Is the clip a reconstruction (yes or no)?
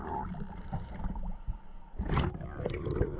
yes